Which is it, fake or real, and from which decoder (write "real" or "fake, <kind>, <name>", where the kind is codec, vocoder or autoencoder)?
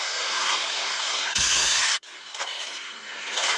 fake, codec, SNAC